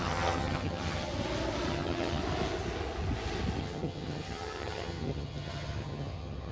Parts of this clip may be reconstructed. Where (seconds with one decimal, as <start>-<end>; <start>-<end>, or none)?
0.0-1.1; 1.7-2.2; 3.6-6.5